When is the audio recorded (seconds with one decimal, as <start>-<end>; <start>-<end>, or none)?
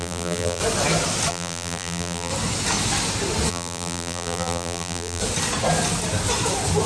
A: 0.6-1.3; 2.3-3.5; 5.2-6.9